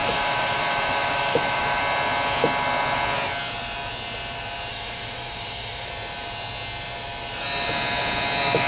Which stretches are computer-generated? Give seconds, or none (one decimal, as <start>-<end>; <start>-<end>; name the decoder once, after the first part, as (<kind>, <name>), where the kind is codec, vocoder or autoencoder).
0.0-1.8 (autoencoder, DAC-VAE); 4.7-5.9